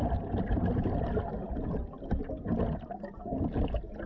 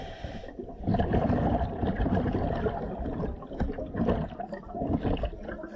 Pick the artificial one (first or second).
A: second